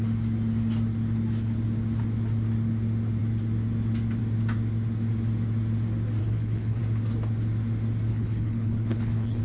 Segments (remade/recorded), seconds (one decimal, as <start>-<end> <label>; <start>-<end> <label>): 0.0-6.2 recorded; 6.2-6.8 remade; 6.8-8.1 recorded; 8.1-9.4 remade